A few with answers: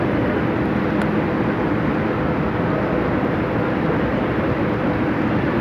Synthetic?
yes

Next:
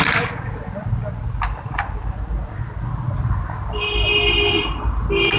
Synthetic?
no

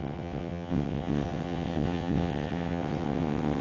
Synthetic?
yes